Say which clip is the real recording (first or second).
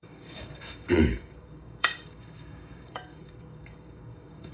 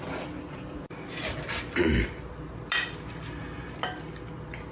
second